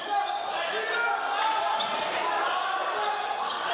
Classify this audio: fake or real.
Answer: real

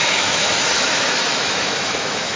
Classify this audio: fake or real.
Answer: fake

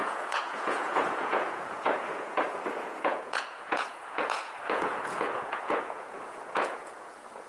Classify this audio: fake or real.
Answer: fake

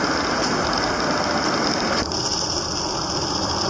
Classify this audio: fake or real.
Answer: real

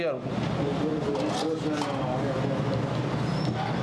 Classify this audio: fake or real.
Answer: real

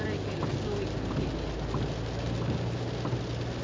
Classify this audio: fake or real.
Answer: real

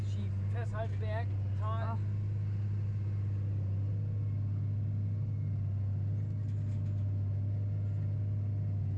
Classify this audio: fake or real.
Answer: real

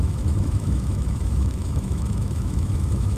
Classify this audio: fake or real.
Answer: fake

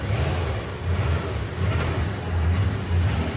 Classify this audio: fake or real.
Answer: real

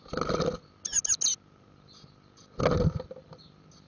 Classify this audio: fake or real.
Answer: real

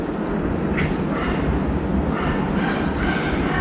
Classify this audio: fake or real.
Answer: real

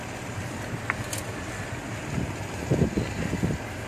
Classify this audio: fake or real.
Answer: real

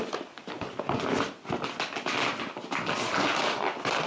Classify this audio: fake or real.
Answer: real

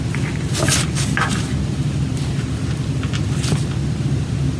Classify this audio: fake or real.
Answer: real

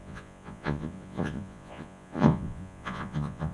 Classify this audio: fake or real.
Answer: fake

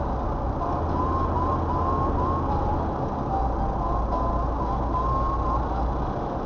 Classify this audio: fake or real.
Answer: real